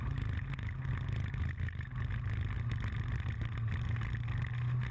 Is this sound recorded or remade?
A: recorded